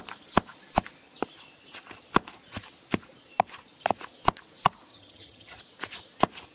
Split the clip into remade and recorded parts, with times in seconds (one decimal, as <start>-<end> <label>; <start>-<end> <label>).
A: 0.0-4.9 recorded; 4.9-5.6 remade; 5.6-6.5 recorded